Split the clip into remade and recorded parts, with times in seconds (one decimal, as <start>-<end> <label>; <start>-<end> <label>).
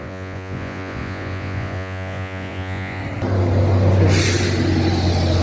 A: 0.0-3.0 remade; 3.0-5.4 recorded